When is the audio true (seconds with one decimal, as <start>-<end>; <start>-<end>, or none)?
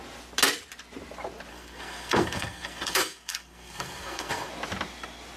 0.0-1.5; 4.5-5.4